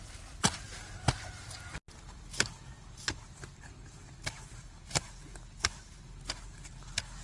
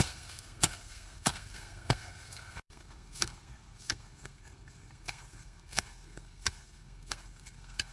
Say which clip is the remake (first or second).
second